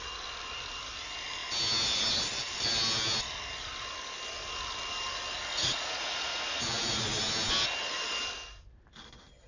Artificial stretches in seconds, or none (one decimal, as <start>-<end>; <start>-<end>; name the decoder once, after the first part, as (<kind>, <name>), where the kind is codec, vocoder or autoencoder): 5.5-7.2 (vocoder, Vocos)